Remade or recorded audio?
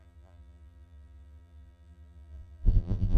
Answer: remade